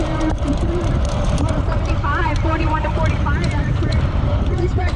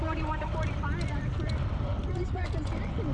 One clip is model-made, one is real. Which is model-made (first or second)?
first